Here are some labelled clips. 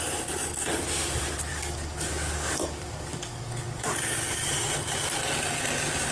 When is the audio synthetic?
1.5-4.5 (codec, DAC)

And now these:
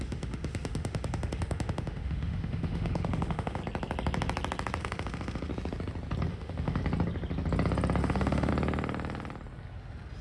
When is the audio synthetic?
0.0-3.6 (autoencoder, DAC-VAE); 4.8-5.5; 6.3-6.8; 8.0-8.5

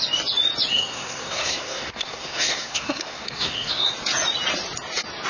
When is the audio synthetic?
0.7-3.9 (codec, SNAC)

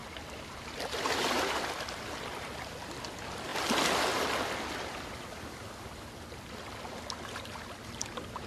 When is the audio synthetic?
3.5-5.9 (vocoder, BigVGAN v2)

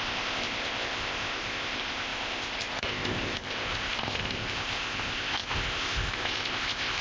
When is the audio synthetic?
0.0-7.0 (codec, ZipCodec)

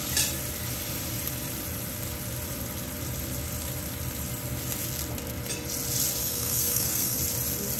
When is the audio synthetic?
6.2-7.2 (codec, SNAC)

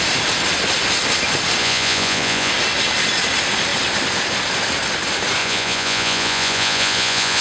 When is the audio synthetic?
1.6-2.5 (vocoder, Vocos); 5.4-7.4